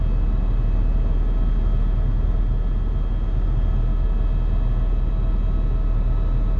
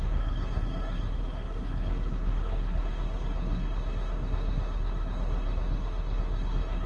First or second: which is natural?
first